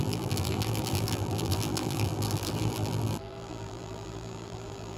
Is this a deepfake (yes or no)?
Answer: yes